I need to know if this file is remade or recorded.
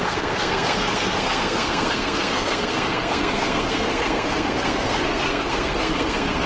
remade